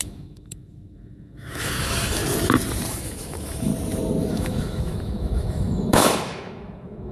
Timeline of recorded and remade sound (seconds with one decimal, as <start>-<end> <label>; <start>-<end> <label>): 0.0-2.2 remade; 2.2-2.9 recorded; 2.9-3.7 remade; 3.7-4.3 recorded; 4.3-7.1 remade